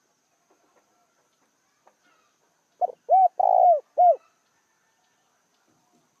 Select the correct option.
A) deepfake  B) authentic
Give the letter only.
B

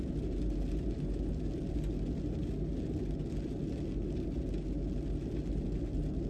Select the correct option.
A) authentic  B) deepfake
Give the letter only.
A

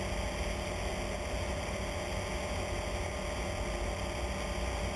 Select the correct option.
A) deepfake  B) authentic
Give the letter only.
B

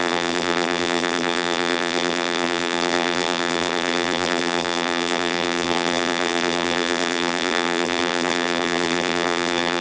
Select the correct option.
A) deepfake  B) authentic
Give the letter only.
A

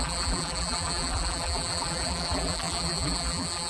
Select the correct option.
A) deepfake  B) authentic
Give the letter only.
A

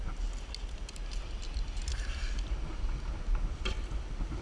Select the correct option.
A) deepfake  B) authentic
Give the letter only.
B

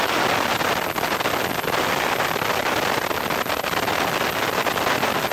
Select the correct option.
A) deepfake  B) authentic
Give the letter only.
B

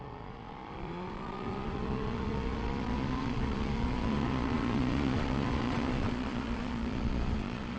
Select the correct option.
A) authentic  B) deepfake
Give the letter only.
B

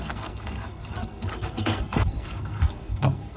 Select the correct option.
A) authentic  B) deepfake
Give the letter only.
B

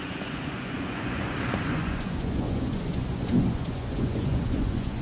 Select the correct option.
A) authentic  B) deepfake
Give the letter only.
B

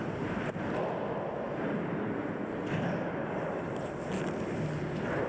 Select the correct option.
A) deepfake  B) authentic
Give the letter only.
B